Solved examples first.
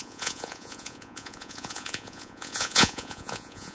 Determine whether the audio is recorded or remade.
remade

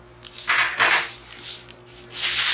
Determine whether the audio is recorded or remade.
recorded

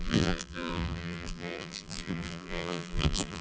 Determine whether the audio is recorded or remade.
remade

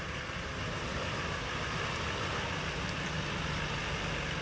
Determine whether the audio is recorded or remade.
recorded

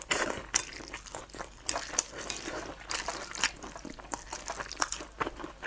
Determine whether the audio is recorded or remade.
recorded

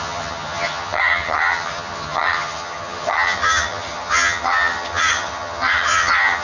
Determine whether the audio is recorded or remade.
remade